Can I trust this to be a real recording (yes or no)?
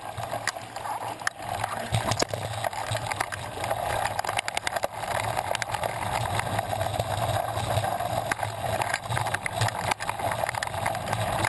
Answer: yes